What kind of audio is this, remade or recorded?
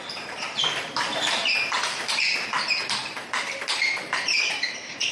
remade